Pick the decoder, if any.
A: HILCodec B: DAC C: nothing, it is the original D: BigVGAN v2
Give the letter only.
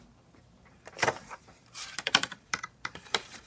D